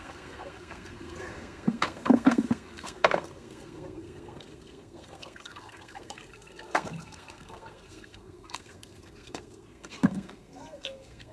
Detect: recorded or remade remade